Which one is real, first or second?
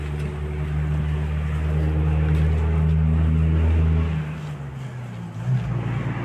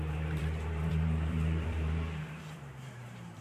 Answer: first